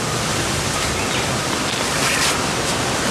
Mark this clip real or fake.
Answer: real